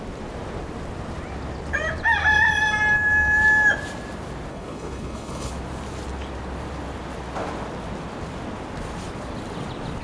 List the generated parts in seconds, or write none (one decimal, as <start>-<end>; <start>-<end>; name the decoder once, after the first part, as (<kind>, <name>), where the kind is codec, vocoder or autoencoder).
4.5-5.5 (codec, HILCodec)